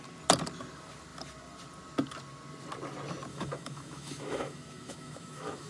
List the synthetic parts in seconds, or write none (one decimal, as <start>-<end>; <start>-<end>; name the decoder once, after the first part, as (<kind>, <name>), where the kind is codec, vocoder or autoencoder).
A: 3.3-5.7 (autoencoder, DAC-VAE)